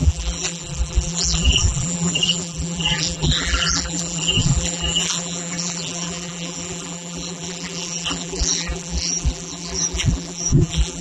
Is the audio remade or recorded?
remade